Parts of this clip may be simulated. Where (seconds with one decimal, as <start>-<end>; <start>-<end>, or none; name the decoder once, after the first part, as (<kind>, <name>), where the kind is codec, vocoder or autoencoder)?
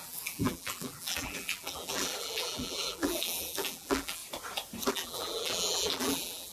0.0-4.2 (vocoder, BigVGAN v2); 4.9-6.5